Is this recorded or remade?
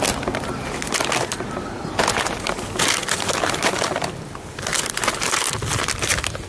recorded